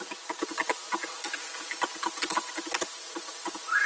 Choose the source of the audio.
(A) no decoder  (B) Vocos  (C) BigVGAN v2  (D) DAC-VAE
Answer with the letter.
A